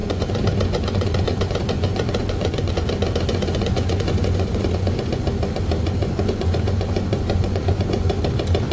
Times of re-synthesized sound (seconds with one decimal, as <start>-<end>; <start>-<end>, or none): 0.0-2.7; 3.3-5.2; 6.0-8.2